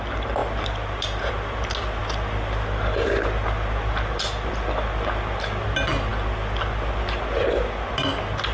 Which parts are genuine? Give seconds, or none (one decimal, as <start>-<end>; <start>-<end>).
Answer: 0.0-8.5